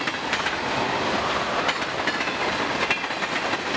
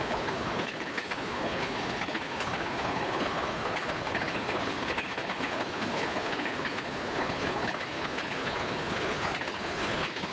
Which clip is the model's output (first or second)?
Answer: second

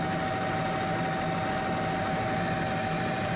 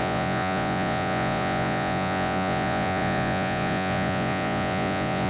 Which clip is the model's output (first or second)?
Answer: second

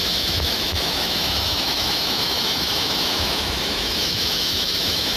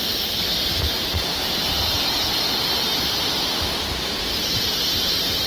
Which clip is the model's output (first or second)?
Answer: first